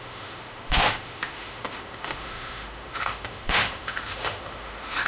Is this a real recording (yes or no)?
no